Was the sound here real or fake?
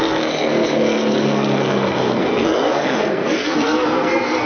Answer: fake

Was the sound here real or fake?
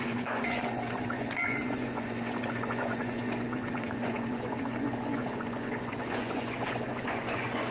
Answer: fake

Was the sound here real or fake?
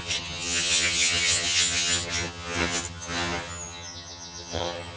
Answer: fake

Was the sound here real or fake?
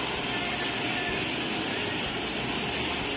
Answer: real